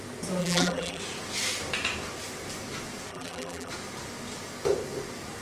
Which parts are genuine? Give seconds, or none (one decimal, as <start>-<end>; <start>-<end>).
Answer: 0.0-0.4; 1.0-3.1; 3.7-5.4